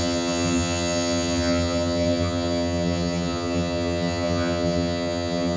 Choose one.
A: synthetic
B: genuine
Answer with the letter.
A